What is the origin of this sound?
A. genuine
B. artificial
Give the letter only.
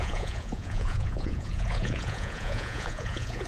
B